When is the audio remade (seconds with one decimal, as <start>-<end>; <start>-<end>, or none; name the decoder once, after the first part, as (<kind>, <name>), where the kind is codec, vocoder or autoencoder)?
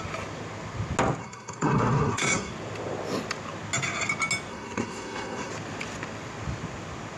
1.2-2.5 (codec, SNAC); 4.5-5.5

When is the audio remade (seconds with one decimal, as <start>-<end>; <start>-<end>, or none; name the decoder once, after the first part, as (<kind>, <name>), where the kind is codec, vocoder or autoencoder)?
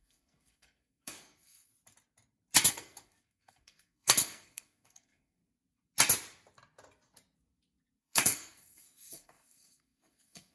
0.0-1.7 (codec, SNAC); 2.7-5.4; 8.0-10.5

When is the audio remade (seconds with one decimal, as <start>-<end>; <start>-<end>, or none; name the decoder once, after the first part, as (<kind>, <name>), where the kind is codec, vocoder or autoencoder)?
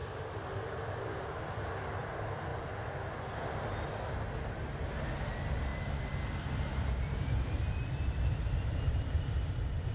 0.5-2.5 (vocoder, BigVGAN v2); 5.3-9.9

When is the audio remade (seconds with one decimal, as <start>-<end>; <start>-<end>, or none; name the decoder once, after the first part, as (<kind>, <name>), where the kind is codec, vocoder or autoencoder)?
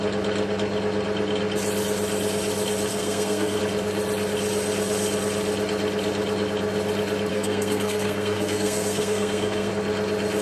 2.9-3.6 (codec, SNAC); 7.3-9.7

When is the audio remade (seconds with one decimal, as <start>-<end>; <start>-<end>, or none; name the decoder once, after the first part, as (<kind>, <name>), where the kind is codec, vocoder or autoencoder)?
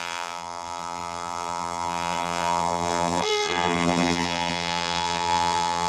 0.0-5.9 (vocoder, BigVGAN v2)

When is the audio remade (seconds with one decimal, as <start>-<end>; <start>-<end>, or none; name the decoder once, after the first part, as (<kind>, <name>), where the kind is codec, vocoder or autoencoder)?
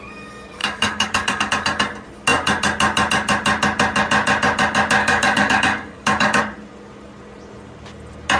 0.6-1.5 (codec, DAC); 5.0-6.4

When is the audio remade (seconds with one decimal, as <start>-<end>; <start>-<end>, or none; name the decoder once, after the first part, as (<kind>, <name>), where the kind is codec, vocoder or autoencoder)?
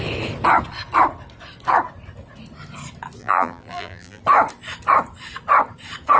3.2-4.2 (vocoder, BigVGAN v2)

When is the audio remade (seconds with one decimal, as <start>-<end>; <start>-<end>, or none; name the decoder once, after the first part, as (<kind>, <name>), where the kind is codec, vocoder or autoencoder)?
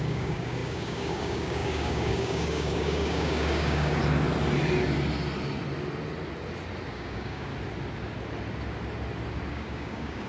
0.0-4.0 (codec, DAC); 6.9-7.5; 9.5-10.3